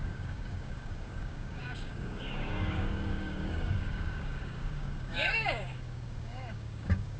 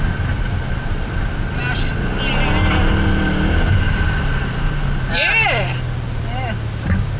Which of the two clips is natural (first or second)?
second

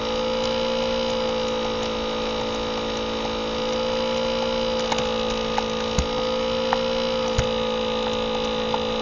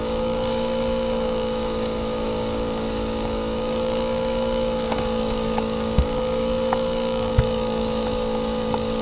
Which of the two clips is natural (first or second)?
first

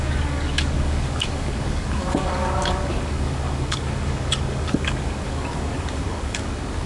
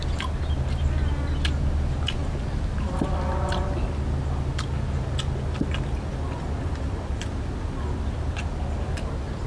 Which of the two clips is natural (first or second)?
second